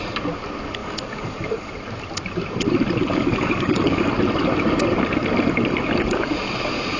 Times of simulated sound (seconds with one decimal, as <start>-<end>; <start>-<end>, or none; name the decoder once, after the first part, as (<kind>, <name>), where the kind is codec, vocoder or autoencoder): 0.8-1.7 (codec, DAC); 3.1-4.1